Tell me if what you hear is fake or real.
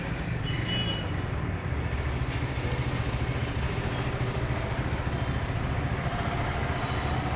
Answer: real